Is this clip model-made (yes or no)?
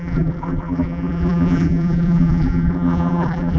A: yes